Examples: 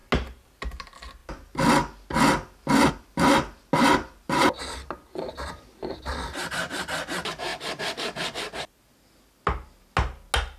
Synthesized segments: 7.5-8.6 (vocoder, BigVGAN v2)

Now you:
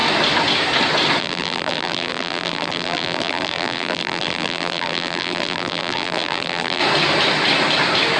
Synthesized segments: 1.2-6.8 (vocoder, BigVGAN v2)

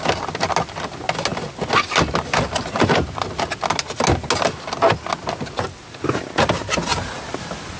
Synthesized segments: none

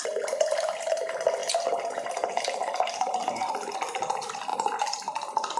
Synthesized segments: 1.4-2.4 (vocoder, BigVGAN v2); 4.5-5.6

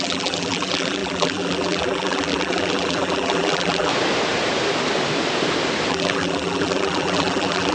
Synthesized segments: 0.0-3.9 (vocoder, BigVGAN v2); 5.9-7.7

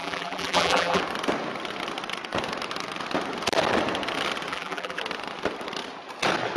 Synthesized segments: 0.0-1.0 (vocoder, BigVGAN v2); 4.5-5.0